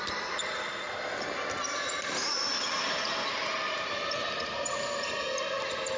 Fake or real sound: real